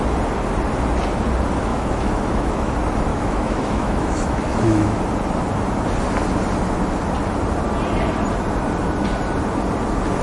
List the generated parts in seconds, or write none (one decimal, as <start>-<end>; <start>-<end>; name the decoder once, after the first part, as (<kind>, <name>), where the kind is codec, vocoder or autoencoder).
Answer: 1.7-2.7 (autoencoder, DAC-VAE); 3.1-5.0